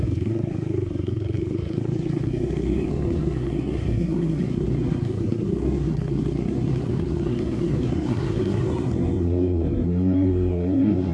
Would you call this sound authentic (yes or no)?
no